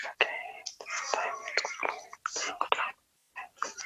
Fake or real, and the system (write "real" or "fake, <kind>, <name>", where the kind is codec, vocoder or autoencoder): real